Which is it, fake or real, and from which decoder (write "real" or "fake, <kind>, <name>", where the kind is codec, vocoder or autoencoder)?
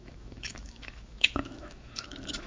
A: fake, autoencoder, DAC-VAE